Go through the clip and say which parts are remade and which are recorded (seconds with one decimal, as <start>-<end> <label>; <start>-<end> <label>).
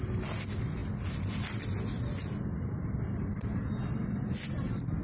0.0-5.0 recorded